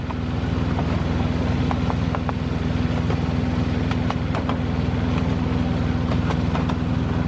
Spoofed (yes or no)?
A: no